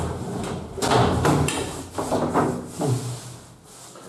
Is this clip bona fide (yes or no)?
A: yes